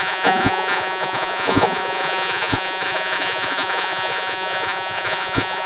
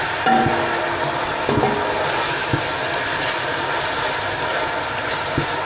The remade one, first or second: first